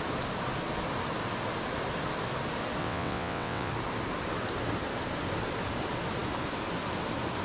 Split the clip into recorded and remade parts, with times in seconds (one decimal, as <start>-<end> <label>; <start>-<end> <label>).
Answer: 0.0-2.8 recorded; 2.8-3.7 remade; 3.7-7.4 recorded